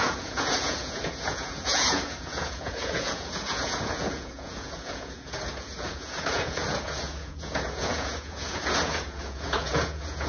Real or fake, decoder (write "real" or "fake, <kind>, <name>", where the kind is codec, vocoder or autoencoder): fake, vocoder, Vocos